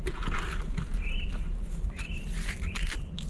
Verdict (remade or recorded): recorded